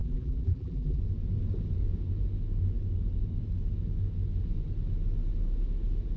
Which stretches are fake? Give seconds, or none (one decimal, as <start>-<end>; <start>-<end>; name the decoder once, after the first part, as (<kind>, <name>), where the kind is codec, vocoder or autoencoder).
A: 0.0-1.0 (vocoder, BigVGAN v2)